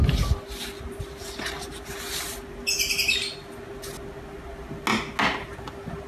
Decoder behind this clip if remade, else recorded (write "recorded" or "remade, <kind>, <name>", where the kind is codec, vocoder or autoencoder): recorded